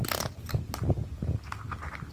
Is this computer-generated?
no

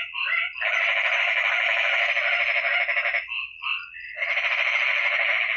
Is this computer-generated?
no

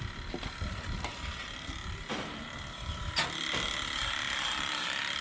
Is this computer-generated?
no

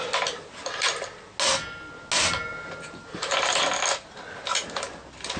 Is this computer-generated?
no